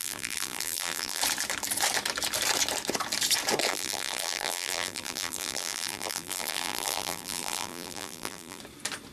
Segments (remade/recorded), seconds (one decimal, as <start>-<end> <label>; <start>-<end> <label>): 0.0-1.2 remade; 1.2-3.7 recorded; 3.7-8.6 remade; 8.6-9.1 recorded